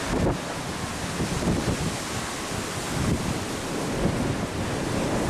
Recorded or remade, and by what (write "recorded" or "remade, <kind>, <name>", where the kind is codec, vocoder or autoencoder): recorded